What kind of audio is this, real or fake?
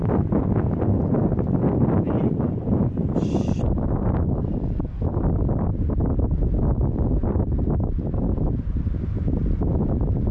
real